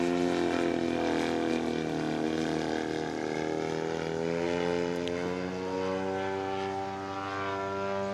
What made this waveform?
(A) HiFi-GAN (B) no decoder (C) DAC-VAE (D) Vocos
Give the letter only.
B